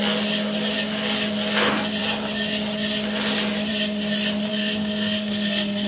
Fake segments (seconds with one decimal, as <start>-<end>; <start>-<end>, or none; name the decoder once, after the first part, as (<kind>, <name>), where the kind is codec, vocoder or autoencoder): 4.5-5.9 (codec, SNAC)